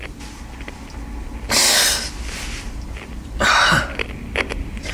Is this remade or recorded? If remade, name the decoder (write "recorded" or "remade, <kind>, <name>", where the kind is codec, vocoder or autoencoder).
recorded